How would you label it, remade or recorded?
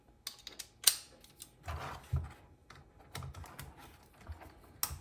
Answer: recorded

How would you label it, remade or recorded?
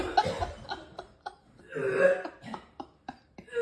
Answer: recorded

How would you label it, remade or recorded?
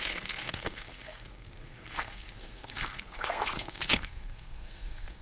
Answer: remade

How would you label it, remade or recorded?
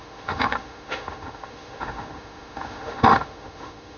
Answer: remade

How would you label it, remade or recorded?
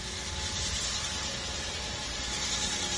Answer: recorded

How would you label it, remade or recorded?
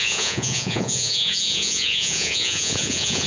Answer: remade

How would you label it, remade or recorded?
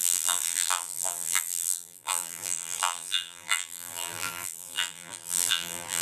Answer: remade